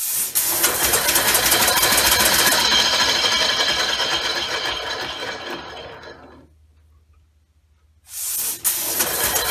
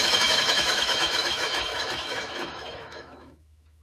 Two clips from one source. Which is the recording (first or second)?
first